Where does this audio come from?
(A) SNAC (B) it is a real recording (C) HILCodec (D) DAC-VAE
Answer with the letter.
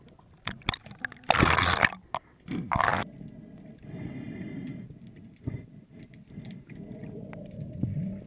B